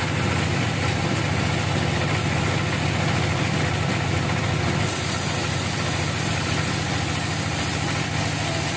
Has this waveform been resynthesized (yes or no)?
no